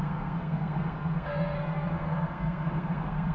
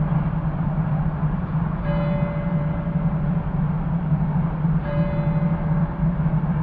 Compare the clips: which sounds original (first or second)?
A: second